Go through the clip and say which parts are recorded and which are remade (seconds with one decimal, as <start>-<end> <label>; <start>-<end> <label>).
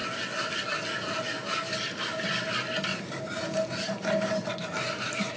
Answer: 0.0-2.2 recorded; 2.2-5.4 remade